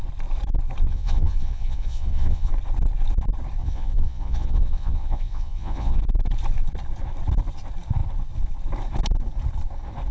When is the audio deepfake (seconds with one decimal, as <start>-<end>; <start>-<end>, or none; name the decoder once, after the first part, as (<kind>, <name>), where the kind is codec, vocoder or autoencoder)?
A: 0.9-2.5 (vocoder, Vocos); 3.6-6.0

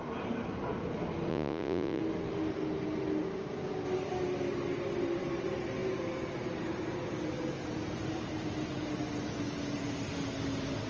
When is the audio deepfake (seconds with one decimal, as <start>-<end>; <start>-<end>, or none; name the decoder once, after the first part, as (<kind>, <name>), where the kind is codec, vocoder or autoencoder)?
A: 1.3-2.0 (vocoder, Vocos)